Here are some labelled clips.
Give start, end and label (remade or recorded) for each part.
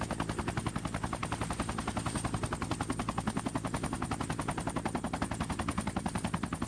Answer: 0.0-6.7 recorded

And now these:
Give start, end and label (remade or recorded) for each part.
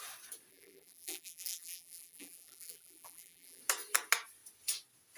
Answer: 0.0-0.5 recorded; 0.5-3.6 remade; 3.6-5.2 recorded